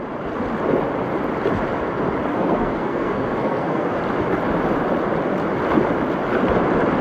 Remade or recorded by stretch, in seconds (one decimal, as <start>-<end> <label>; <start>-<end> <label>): 0.0-2.3 recorded; 2.3-4.0 remade; 4.0-7.0 recorded